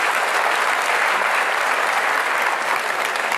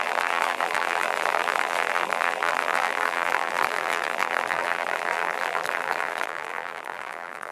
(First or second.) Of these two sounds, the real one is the first